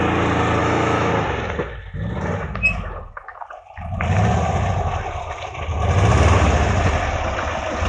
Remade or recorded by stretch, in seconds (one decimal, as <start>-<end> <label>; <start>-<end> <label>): 0.0-0.6 recorded; 0.6-1.1 remade; 1.1-7.9 recorded